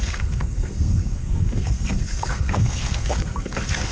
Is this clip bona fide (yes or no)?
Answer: no